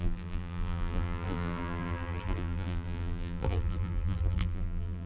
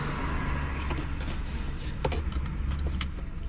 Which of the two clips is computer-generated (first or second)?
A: first